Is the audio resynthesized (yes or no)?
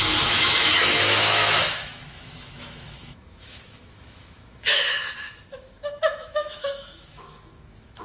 yes